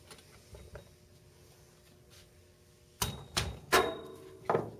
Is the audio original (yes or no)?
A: yes